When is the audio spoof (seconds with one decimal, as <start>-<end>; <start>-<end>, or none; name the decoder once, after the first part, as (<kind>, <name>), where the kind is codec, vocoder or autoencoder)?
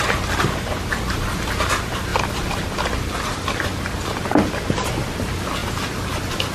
none